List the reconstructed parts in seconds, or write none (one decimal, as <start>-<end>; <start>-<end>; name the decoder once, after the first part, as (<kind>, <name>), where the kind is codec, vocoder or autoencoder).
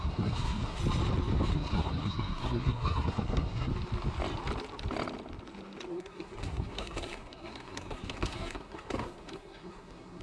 0.0-0.8 (codec, SNAC); 1.5-3.7; 5.9-10.2